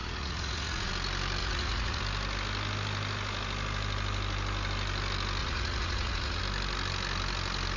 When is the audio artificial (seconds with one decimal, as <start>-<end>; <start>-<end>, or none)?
0.0-0.9; 1.4-2.0; 5.4-6.4

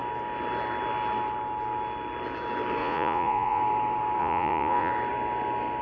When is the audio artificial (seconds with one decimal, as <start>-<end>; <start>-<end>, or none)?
2.8-3.6; 4.2-4.9

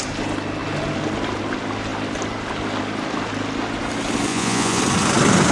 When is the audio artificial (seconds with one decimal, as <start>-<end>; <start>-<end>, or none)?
4.3-4.8

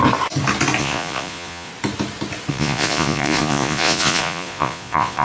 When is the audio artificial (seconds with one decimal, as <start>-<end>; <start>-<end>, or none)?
0.8-1.7; 2.5-5.2

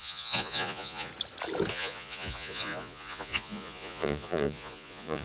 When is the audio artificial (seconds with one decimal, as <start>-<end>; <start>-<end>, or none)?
0.0-1.1; 1.7-5.2

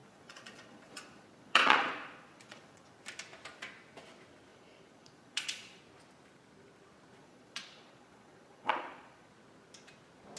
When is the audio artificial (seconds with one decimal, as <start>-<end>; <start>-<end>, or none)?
0.0-2.9; 4.5-5.8; 7.2-9.3

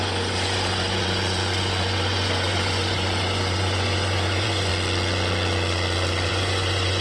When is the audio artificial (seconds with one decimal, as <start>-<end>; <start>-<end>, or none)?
0.0-4.7; 6.3-7.0

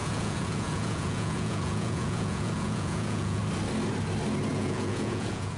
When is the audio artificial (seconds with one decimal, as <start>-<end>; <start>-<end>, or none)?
0.0-3.4; 4.5-5.6